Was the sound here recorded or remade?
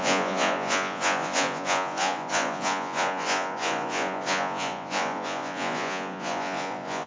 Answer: remade